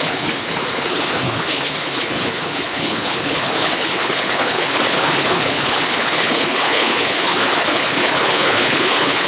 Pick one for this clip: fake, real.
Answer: fake